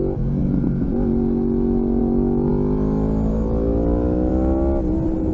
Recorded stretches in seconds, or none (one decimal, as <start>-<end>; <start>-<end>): 0.0-5.3